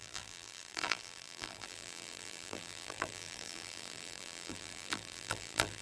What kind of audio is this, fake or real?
fake